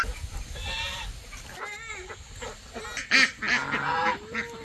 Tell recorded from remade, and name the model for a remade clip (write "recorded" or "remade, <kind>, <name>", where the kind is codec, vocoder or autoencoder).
recorded